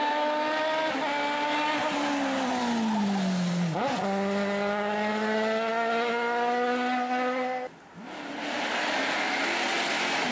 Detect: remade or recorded recorded